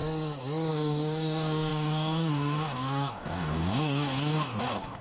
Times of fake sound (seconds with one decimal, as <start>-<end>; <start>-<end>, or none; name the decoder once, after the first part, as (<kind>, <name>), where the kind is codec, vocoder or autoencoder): 0.7-5.0 (codec, DAC)